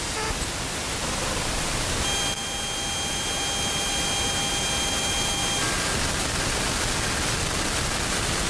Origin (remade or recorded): recorded